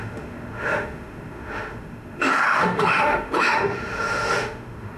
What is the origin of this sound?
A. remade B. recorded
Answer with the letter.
A